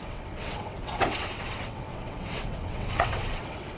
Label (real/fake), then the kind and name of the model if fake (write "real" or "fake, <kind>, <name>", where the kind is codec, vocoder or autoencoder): fake, vocoder, WaveNeXt